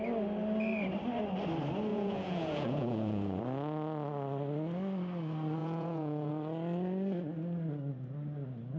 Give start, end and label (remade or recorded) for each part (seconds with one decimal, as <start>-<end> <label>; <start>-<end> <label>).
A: 0.0-1.9 recorded; 1.9-3.4 remade; 3.4-5.6 recorded; 5.6-6.3 remade; 6.3-8.8 recorded